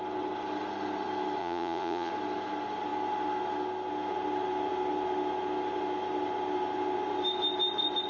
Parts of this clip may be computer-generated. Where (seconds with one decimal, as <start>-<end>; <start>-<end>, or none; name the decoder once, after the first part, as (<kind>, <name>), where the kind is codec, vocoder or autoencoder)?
1.4-2.1 (vocoder, Vocos)